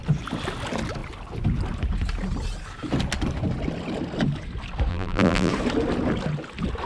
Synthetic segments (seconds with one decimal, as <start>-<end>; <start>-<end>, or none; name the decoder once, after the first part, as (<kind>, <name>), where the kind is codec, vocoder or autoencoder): 4.9-5.5 (vocoder, BigVGAN v2)